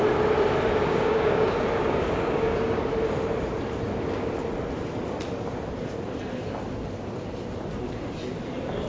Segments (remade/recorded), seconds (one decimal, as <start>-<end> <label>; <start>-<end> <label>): 0.0-0.9 recorded; 0.9-2.8 remade; 2.8-8.9 recorded